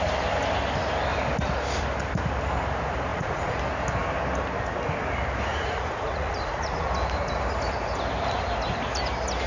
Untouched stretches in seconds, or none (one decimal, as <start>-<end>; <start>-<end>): 0.0-3.1; 3.6-5.5; 6.9-9.5